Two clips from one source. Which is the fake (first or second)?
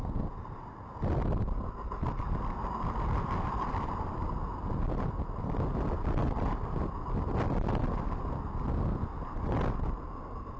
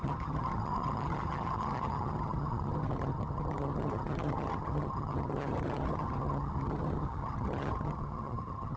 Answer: second